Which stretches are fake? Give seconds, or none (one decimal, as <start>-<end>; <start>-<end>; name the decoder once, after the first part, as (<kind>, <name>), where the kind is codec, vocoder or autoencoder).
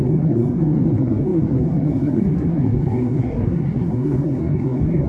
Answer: 0.0-5.1 (codec, SNAC)